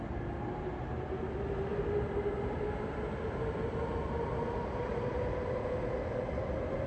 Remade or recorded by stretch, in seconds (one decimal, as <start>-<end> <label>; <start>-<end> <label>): 0.0-6.9 recorded